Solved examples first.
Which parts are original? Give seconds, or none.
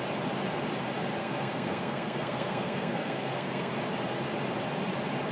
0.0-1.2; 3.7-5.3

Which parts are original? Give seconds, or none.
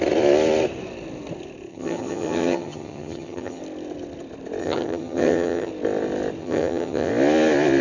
0.0-1.7; 3.6-4.6; 5.7-6.4; 7.1-7.8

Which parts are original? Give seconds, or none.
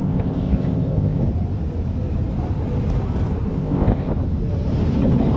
1.2-3.5; 4.1-5.4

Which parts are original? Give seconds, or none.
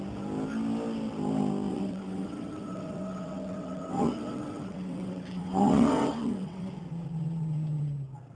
0.0-1.7; 6.7-8.3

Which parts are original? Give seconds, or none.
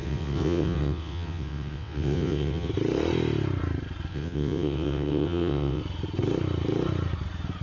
2.7-4.1; 5.8-7.6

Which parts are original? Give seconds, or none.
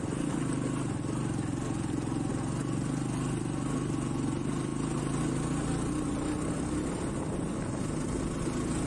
0.0-8.9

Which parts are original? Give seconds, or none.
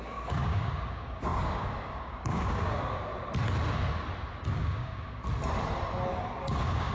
3.1-4.5; 5.2-6.4